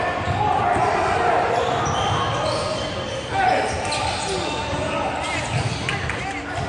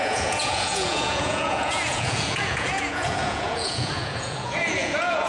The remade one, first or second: second